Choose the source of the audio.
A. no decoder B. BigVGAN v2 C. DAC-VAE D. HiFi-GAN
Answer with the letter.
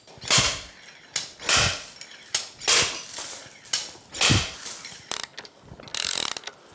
A